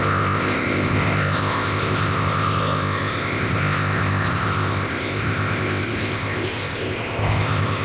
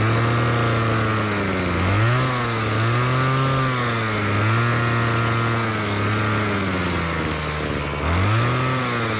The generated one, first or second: first